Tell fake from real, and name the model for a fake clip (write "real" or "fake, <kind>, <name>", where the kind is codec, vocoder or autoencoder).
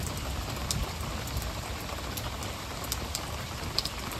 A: real